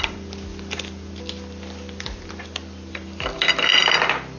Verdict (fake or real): fake